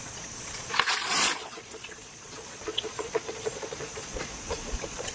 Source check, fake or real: fake